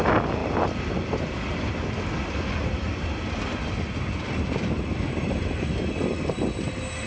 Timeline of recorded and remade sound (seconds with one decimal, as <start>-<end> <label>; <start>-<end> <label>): 0.0-7.1 recorded